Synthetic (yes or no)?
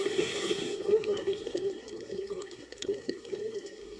yes